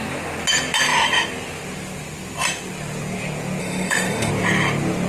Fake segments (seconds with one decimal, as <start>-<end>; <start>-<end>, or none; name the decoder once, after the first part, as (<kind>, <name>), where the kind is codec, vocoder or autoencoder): 3.6-4.3 (autoencoder, DAC-VAE)

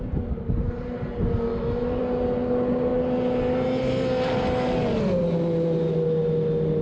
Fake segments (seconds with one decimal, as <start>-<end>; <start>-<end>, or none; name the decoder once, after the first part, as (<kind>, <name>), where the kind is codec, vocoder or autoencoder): 1.5-2.0 (autoencoder, DAC-VAE)

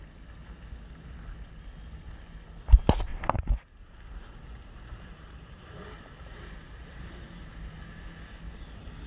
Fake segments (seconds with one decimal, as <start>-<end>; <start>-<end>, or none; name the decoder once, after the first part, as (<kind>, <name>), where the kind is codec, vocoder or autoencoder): 3.1-7.8 (vocoder, BigVGAN v2)

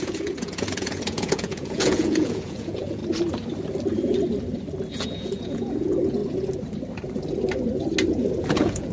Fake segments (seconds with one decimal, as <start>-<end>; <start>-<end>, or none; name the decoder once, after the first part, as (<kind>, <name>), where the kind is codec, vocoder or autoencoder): 0.0-3.0 (vocoder, Vocos); 4.9-6.2; 8.4-8.9